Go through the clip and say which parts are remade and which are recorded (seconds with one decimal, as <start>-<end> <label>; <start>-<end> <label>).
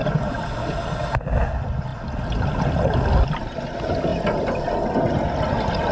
0.0-5.9 recorded